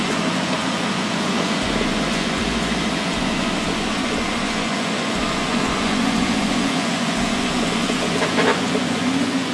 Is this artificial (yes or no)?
yes